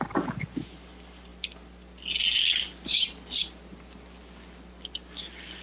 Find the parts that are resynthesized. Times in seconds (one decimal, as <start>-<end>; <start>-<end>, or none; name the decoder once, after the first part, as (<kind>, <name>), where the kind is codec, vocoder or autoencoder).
none